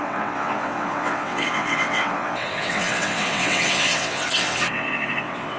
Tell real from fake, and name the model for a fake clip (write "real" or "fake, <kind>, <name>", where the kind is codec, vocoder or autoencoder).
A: fake, vocoder, WaveNeXt